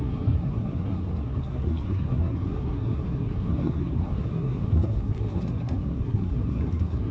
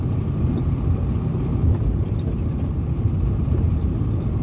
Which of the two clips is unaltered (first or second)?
second